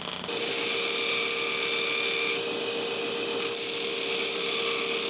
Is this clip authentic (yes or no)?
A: yes